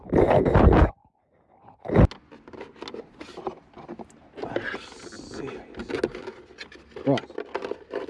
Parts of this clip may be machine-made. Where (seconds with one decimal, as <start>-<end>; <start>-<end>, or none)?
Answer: none